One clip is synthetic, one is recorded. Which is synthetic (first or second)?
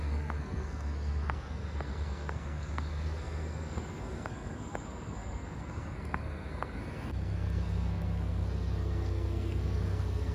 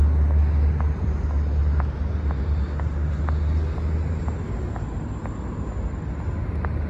first